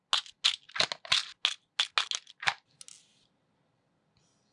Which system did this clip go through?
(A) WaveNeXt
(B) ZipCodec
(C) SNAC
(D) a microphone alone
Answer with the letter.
D